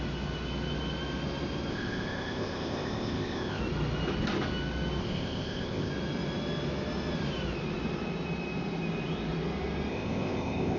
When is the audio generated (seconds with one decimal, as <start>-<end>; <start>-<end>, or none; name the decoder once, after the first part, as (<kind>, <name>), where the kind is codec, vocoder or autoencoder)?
1.7-3.6 (codec, ZipCodec); 5.0-5.9; 9.9-10.8